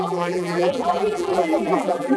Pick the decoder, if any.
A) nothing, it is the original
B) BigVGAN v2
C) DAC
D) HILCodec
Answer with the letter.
B